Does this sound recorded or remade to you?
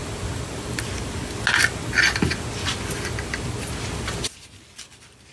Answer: recorded